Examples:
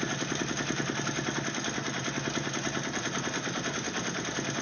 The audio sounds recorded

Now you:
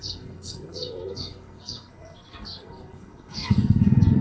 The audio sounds remade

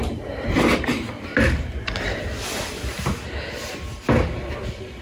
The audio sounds recorded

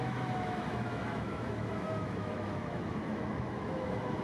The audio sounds remade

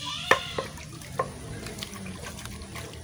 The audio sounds recorded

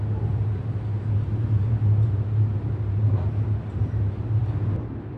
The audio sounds recorded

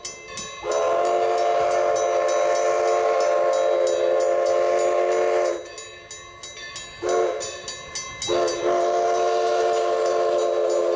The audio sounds recorded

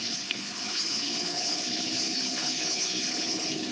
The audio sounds remade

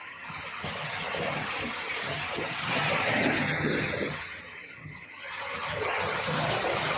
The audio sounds remade